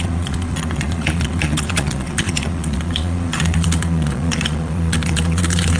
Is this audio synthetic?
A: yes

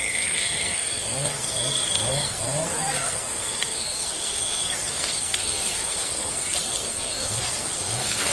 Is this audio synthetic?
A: yes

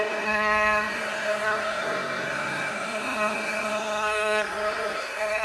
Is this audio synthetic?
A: yes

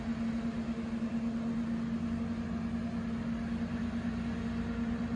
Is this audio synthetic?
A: no